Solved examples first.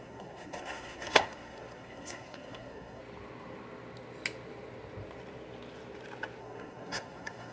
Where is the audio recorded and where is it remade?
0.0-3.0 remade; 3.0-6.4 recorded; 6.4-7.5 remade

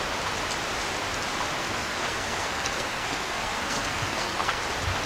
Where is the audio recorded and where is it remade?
0.0-1.6 recorded; 1.6-4.6 remade; 4.6-5.1 recorded

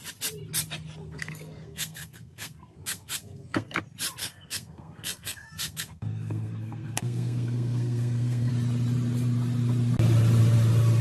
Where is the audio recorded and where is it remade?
0.0-1.0 recorded; 1.0-3.8 remade; 3.8-4.2 recorded; 4.2-8.5 remade; 8.5-11.0 recorded

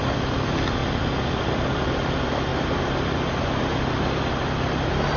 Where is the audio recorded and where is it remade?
0.0-5.2 recorded

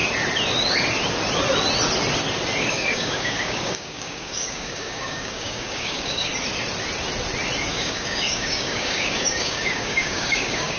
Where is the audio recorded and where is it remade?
0.0-2.6 recorded; 2.6-6.3 remade; 6.3-7.7 recorded; 7.7-10.8 remade

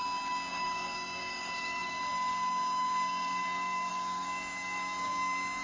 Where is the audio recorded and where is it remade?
0.0-0.5 recorded; 0.5-5.6 remade

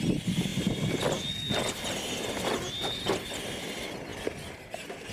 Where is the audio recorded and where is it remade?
0.0-5.1 recorded